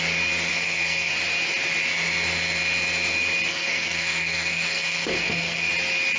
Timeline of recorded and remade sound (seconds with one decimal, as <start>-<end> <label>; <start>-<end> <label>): 0.0-0.5 recorded; 0.5-1.1 remade; 1.1-3.5 recorded; 3.5-5.7 remade; 5.7-6.2 recorded